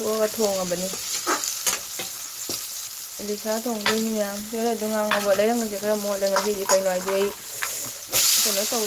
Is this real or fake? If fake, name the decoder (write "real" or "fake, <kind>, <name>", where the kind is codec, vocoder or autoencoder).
real